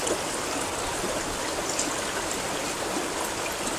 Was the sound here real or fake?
real